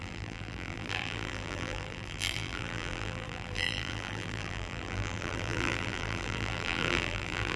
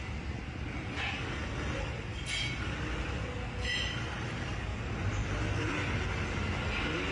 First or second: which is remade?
first